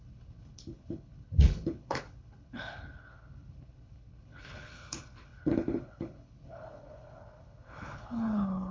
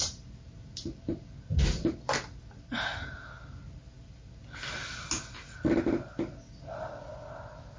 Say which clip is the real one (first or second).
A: second